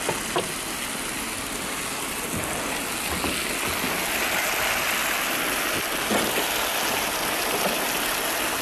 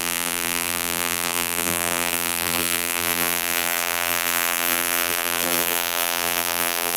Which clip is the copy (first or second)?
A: second